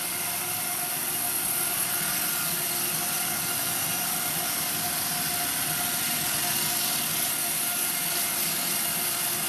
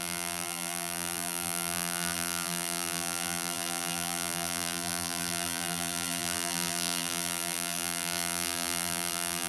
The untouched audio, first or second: first